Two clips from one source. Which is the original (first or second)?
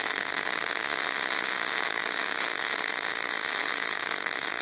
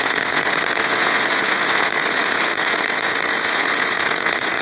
first